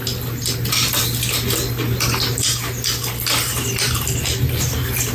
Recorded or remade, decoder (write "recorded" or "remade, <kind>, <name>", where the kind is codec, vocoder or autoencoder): recorded